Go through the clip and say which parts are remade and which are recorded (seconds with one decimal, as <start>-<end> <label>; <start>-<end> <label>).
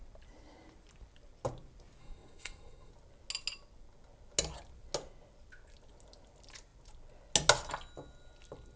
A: 0.0-2.0 recorded; 2.0-2.9 remade; 2.9-8.8 recorded